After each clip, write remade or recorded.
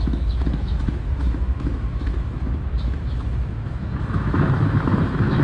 remade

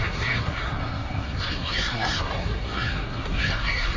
remade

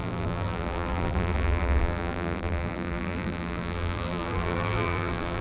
remade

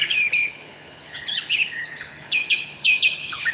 remade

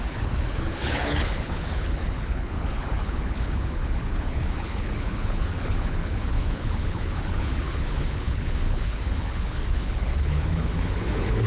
remade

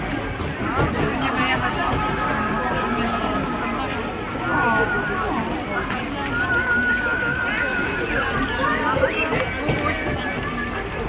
recorded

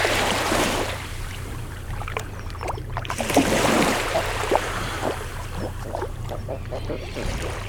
remade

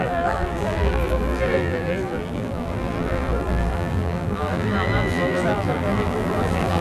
remade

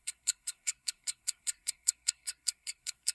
remade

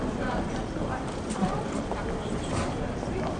remade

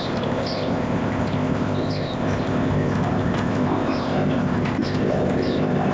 remade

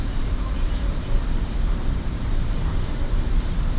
remade